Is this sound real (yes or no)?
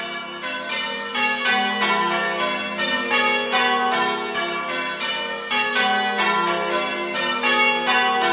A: yes